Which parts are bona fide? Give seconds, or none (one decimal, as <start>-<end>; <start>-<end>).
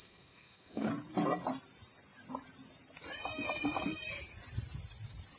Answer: 0.9-5.4